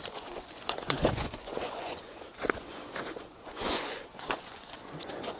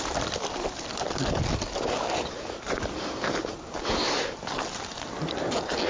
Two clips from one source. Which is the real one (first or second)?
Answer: second